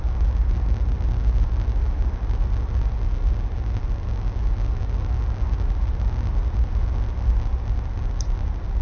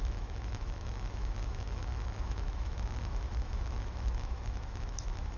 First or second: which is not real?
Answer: second